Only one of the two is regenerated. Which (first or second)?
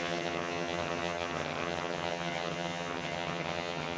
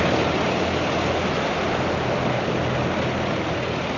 first